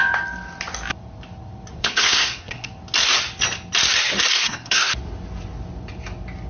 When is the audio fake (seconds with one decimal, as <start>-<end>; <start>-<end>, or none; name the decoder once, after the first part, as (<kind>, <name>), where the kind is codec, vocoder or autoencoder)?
1.7-2.7 (codec, SNAC); 4.3-4.9